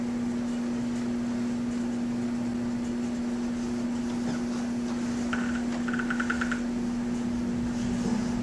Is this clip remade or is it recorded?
recorded